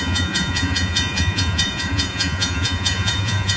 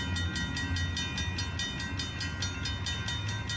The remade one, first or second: first